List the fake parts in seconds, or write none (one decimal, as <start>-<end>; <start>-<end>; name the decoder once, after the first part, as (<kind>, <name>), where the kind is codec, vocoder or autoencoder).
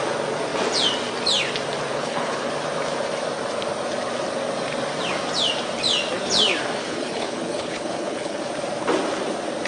1.9-2.5 (codec, HILCodec); 6.8-8.4